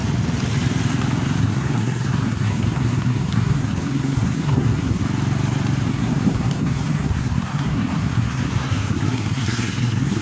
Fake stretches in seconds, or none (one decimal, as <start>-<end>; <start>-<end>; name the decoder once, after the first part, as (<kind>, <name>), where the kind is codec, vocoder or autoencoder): 1.4-5.0 (codec, SNAC); 5.9-10.2